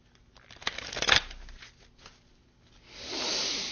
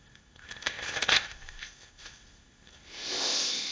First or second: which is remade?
second